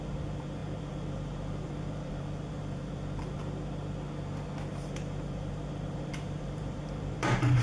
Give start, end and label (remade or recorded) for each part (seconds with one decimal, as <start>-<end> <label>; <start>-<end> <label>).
0.0-3.4 remade; 3.4-4.7 recorded; 4.7-7.6 remade